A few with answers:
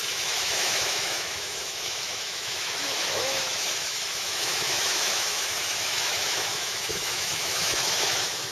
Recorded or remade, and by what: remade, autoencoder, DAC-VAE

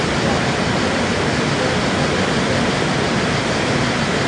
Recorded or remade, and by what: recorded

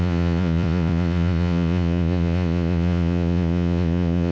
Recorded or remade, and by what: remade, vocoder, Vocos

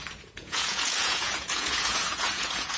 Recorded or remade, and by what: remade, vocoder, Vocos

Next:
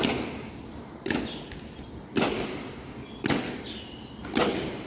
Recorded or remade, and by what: recorded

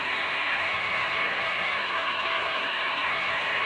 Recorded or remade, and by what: remade, codec, SNAC